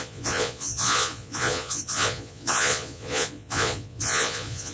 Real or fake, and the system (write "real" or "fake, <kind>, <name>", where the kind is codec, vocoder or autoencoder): fake, vocoder, Vocos